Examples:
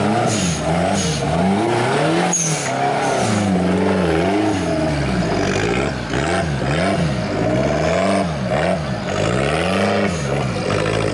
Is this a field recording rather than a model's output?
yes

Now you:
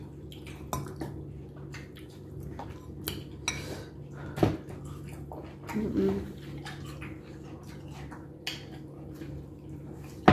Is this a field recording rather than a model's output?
yes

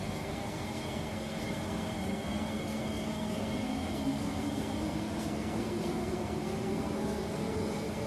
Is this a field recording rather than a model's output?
no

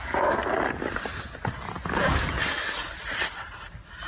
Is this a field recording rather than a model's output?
yes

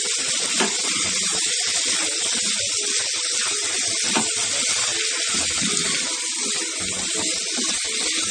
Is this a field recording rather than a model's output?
yes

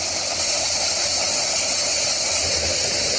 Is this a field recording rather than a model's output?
yes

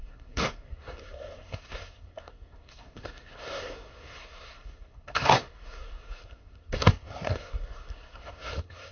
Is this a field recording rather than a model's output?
no